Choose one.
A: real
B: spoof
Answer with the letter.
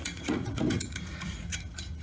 B